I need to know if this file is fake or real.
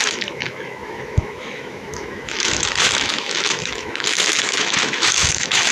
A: fake